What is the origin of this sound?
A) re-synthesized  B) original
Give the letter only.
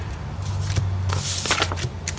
B